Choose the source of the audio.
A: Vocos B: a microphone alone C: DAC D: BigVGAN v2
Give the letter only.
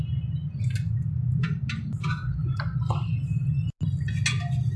B